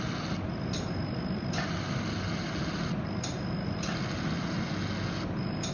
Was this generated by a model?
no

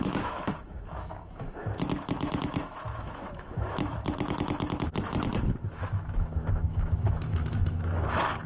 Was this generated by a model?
yes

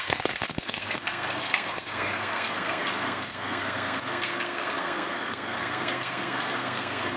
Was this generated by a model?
yes